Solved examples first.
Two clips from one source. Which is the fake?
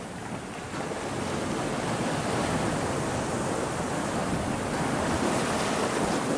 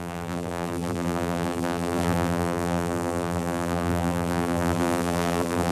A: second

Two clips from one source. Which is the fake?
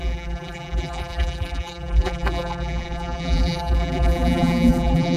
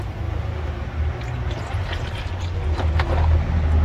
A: first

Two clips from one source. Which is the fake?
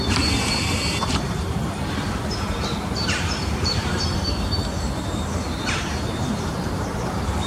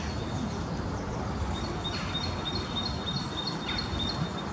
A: first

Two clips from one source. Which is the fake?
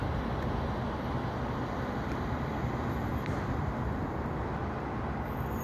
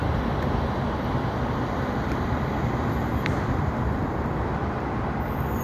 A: second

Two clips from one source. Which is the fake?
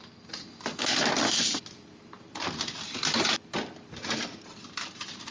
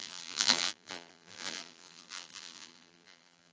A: second